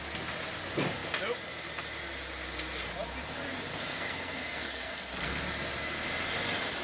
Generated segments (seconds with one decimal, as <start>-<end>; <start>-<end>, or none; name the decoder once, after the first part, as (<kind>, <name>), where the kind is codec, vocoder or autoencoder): 3.7-5.4 (codec, SNAC)